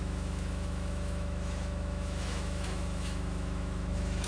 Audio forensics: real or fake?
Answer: fake